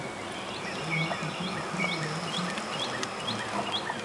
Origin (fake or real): real